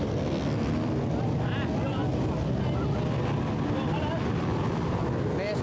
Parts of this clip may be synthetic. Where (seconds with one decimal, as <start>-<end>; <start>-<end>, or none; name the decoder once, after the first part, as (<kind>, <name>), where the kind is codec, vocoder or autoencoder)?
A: none